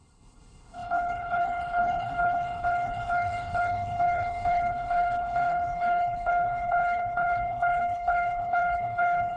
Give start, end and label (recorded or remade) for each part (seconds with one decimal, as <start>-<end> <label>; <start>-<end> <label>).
0.0-9.4 remade